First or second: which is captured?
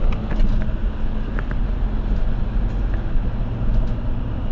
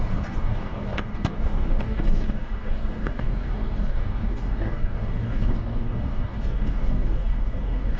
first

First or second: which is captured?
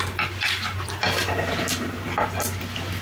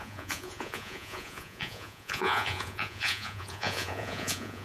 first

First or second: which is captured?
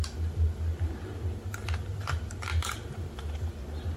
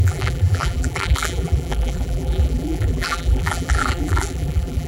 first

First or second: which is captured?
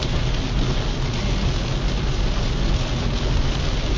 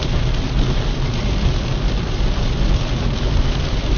first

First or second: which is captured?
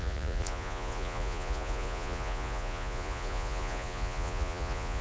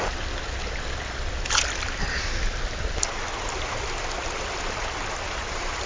second